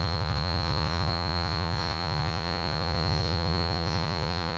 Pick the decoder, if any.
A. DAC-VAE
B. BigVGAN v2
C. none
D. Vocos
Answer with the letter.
D